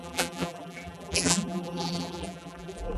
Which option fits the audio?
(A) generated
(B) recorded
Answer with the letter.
A